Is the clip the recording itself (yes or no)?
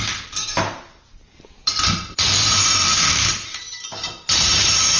no